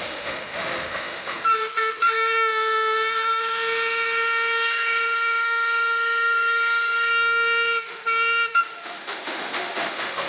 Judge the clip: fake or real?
fake